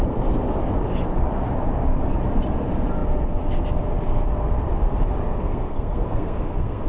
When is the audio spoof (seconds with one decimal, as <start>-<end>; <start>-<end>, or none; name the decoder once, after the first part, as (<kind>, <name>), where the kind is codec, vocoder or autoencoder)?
5.4-6.9 (codec, SNAC)